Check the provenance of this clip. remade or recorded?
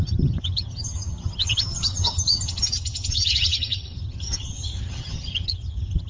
remade